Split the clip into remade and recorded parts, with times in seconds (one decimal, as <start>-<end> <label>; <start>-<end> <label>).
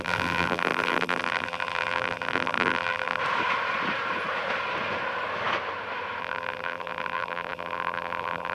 0.0-3.2 remade; 3.2-6.2 recorded; 6.2-8.5 remade